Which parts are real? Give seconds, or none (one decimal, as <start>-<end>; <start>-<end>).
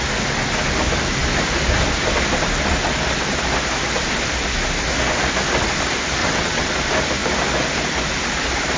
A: 0.0-6.2; 6.7-8.8